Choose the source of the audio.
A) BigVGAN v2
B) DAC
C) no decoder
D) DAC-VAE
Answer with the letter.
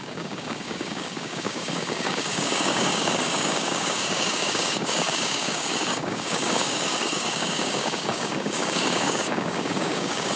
B